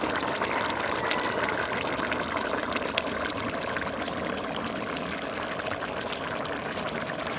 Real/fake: real